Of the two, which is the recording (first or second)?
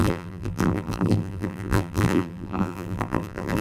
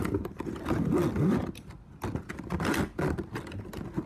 second